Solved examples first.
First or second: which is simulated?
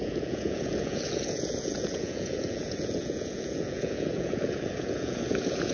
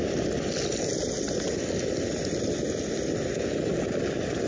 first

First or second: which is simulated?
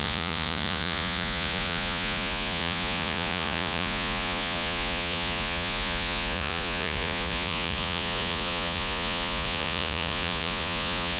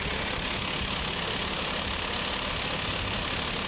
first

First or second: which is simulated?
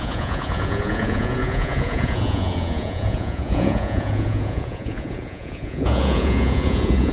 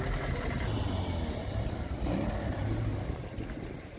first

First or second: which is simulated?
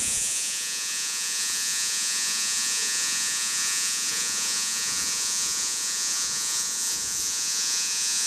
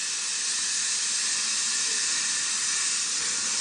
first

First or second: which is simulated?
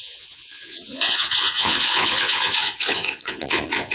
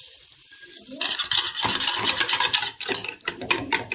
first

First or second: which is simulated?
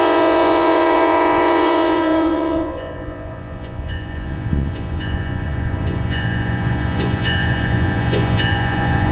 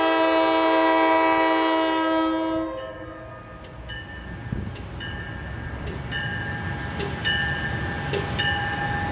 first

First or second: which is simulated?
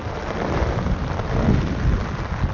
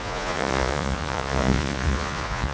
second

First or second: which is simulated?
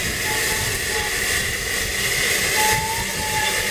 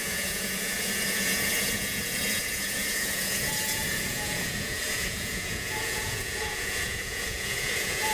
second